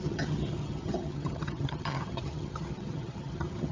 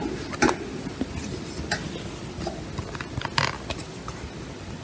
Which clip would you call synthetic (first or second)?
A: first